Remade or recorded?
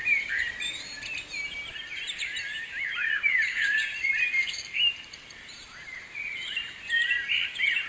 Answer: remade